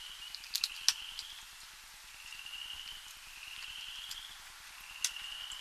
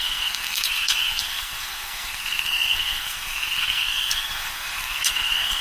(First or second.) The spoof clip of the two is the second